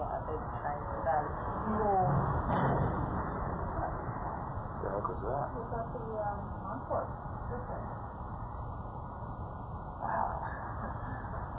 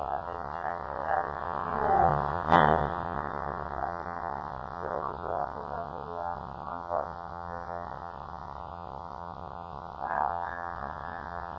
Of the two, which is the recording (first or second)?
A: first